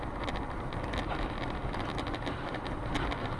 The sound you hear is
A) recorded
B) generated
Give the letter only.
A